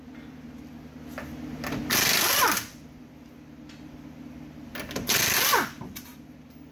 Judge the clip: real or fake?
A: real